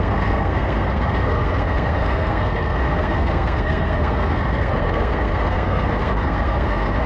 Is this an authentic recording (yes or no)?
no